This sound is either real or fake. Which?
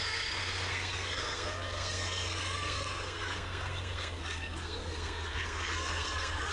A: fake